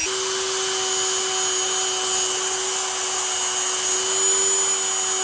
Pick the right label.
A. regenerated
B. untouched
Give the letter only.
B